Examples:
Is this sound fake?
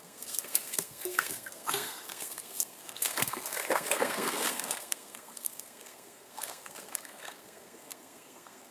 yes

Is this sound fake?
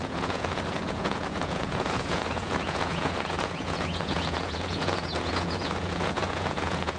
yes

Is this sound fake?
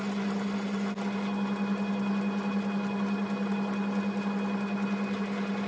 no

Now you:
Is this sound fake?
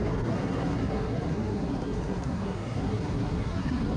yes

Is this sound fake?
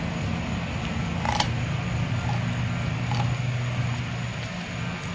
no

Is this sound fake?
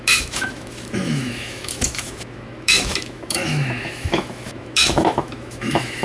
yes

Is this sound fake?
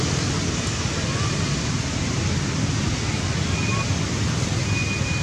no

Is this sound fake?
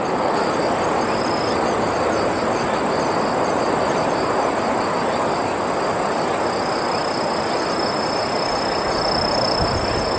no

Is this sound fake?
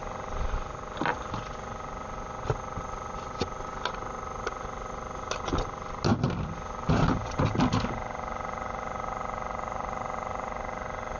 no